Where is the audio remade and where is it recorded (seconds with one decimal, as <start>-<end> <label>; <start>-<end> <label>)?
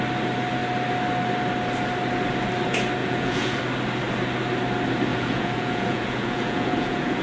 0.0-3.0 recorded; 3.0-3.6 remade; 3.6-5.1 recorded; 5.1-7.2 remade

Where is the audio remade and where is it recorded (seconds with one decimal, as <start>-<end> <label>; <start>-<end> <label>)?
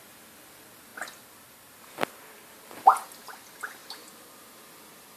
0.0-5.2 recorded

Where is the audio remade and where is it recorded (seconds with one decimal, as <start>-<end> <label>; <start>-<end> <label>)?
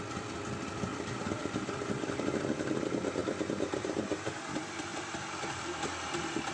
0.0-4.9 recorded; 4.9-5.6 remade; 5.6-6.5 recorded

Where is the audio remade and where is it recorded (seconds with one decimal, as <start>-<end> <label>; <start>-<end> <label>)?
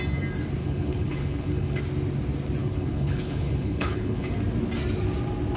0.0-0.6 recorded; 0.6-1.8 remade; 1.8-2.6 recorded; 2.6-4.3 remade; 4.3-5.6 recorded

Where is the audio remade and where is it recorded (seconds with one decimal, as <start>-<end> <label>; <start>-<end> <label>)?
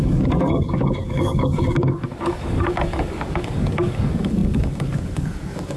0.0-5.8 remade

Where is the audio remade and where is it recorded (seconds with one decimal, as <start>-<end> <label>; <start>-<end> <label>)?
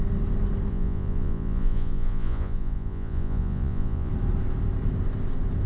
0.0-0.7 recorded; 0.7-4.1 remade; 4.1-5.7 recorded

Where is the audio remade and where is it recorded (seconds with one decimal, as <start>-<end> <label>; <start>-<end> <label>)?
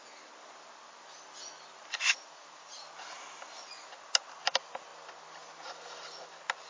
0.0-4.9 recorded; 4.9-5.9 remade; 5.9-6.7 recorded